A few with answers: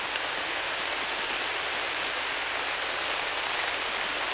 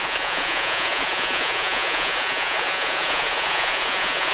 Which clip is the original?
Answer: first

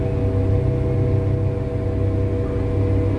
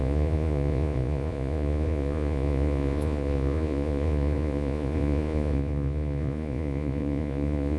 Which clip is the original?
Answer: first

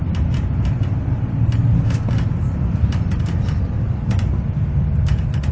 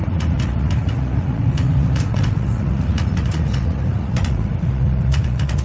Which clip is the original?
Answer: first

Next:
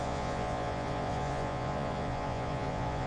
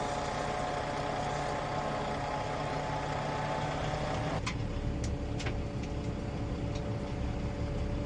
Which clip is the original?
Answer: second